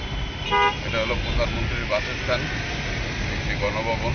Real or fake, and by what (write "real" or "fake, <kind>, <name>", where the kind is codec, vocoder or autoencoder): real